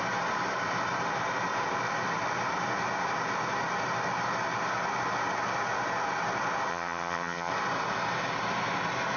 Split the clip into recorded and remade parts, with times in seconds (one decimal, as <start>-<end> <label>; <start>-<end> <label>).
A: 0.0-6.7 recorded; 6.7-7.5 remade; 7.5-9.2 recorded